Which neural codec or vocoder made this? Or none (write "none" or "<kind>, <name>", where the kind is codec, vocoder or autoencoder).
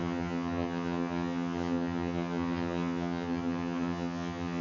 vocoder, HiFi-GAN